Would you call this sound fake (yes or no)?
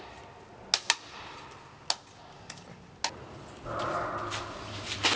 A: no